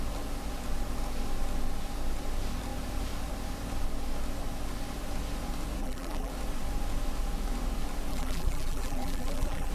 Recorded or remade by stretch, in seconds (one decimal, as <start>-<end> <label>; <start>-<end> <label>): 0.0-5.8 recorded; 5.8-6.3 remade; 6.3-8.1 recorded; 8.1-9.7 remade